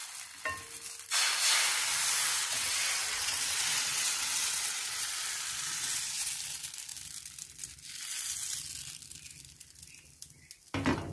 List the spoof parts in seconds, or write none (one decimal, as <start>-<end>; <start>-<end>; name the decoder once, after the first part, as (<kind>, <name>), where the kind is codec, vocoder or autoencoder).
2.4-5.1 (vocoder, WaveNeXt)